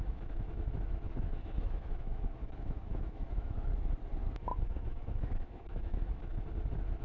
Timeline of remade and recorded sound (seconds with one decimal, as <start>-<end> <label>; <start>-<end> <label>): 0.0-3.6 remade; 3.6-4.5 recorded; 4.5-6.3 remade; 6.3-7.0 recorded